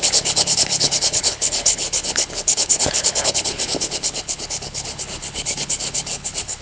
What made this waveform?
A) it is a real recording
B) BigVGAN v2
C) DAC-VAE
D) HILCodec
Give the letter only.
D